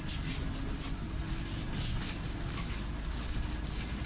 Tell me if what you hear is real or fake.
real